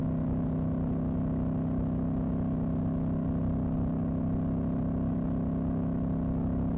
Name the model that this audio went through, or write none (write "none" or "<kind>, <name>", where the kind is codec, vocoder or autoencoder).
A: none